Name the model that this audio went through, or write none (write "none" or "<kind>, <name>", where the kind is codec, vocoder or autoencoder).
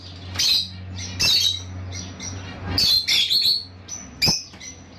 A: none